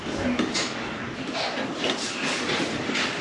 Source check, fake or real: real